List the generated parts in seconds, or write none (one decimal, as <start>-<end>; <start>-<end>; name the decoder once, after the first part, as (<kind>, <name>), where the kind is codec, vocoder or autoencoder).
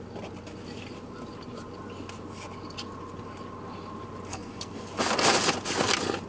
4.3-4.9 (codec, SNAC)